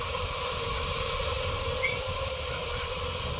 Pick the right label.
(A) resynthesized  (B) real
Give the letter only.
B